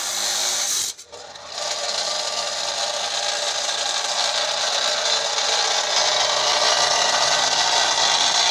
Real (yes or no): yes